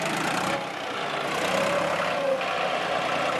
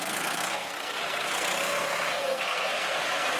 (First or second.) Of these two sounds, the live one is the first